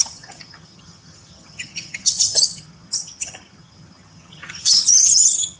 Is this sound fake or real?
fake